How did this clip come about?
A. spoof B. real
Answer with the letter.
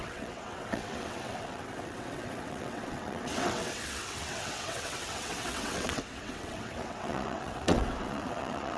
A